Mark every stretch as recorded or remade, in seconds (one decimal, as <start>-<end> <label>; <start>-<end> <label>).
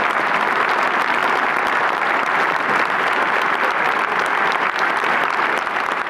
0.0-6.1 recorded